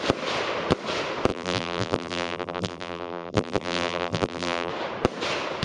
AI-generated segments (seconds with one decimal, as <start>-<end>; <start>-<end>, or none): 1.3-4.7

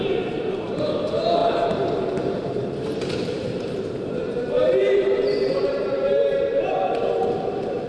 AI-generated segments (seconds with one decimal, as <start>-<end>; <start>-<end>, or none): 0.0-1.4; 2.2-7.9

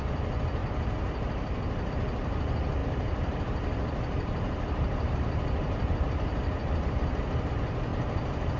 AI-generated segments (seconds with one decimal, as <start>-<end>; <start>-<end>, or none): 0.6-1.9; 2.8-7.5

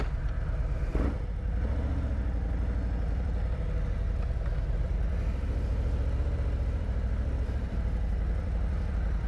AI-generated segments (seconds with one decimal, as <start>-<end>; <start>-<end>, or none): 0.0-0.9; 3.2-5.7; 6.2-9.3

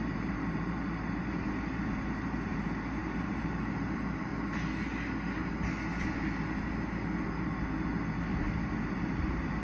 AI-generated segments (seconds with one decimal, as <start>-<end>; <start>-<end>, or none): 0.0-4.3; 8.2-9.6

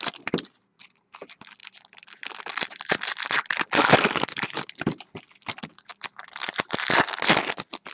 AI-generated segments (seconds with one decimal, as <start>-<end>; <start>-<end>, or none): 0.0-5.9

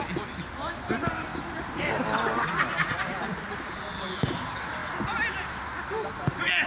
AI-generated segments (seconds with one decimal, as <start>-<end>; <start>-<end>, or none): 1.3-3.2; 4.8-5.6

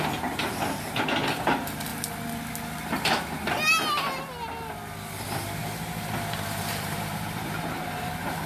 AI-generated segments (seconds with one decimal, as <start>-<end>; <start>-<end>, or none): 0.0-1.9; 5.6-8.5